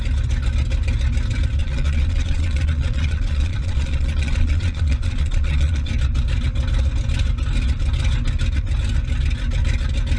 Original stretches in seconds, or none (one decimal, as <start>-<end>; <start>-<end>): 0.0-1.6; 5.9-10.2